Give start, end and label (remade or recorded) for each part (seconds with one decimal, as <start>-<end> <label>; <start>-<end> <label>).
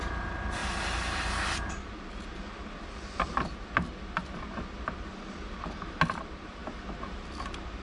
0.0-6.6 remade; 6.6-7.8 recorded